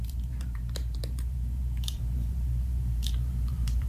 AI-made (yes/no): yes